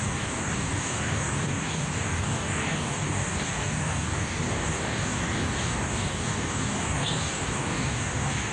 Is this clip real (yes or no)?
no